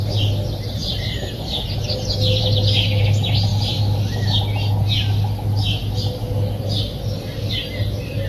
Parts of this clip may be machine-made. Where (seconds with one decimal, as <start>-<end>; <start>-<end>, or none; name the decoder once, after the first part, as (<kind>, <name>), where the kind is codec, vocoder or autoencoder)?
none